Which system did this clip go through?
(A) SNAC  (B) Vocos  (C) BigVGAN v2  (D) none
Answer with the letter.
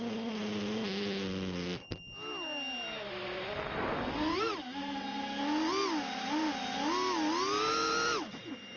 D